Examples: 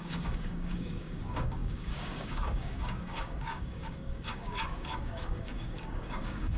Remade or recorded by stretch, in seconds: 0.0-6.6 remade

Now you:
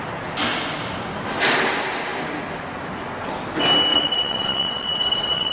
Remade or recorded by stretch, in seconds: 0.0-3.9 recorded; 3.9-5.5 remade

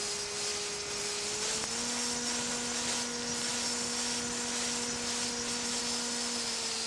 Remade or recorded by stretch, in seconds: 0.0-6.9 recorded

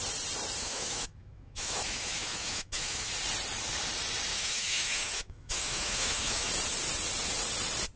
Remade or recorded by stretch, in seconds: 0.0-0.6 recorded; 0.6-3.1 remade; 3.1-4.3 recorded; 4.3-6.5 remade; 6.5-8.0 recorded

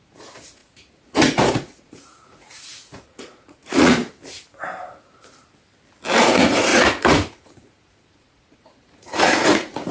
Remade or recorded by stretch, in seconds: 0.0-4.0 remade; 4.0-6.2 recorded; 6.2-9.9 remade

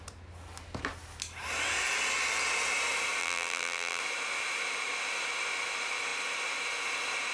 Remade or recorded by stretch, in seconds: 0.0-3.2 recorded; 3.2-4.0 remade; 4.0-7.3 recorded